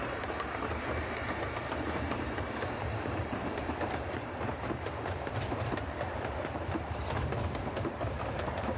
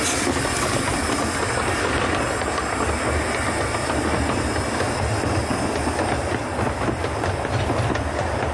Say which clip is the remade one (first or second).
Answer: first